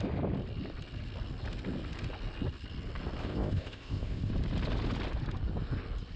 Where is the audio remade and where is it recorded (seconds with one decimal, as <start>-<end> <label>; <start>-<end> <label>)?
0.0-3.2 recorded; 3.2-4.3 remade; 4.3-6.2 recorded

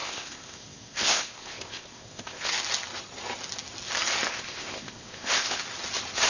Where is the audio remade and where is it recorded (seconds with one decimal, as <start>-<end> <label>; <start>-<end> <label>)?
0.0-2.5 remade; 2.5-4.3 recorded; 4.3-5.6 remade; 5.6-6.3 recorded

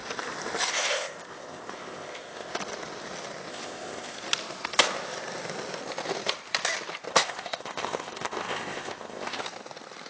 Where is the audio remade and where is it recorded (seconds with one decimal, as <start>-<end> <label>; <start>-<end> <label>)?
0.0-0.7 recorded; 0.7-2.6 remade; 2.6-3.5 recorded; 3.5-4.2 remade; 4.2-7.1 recorded; 7.1-9.4 remade; 9.4-10.1 recorded

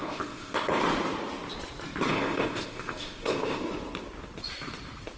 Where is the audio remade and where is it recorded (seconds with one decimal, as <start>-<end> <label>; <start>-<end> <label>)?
0.0-0.8 remade; 0.8-2.1 recorded; 2.1-3.6 remade; 3.6-5.2 recorded

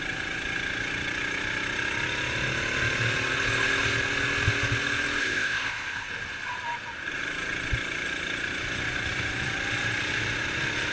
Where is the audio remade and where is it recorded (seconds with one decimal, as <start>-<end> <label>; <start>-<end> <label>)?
0.0-5.2 recorded; 5.2-6.1 remade; 6.1-10.9 recorded